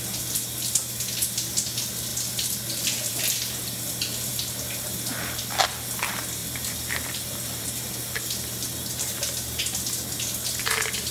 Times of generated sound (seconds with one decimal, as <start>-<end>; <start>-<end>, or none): 6.4-7.8